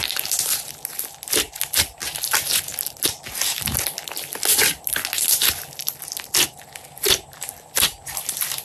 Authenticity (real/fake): real